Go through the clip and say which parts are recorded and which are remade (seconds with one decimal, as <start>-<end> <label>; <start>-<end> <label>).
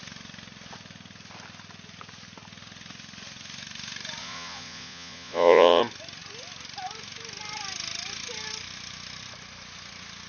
0.0-4.2 recorded; 4.2-5.8 remade; 5.8-10.3 recorded